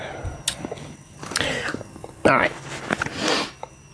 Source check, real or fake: real